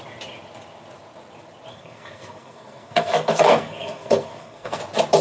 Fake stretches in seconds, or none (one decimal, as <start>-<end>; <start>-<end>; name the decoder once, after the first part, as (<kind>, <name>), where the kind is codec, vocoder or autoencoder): 1.7-4.8 (codec, SNAC)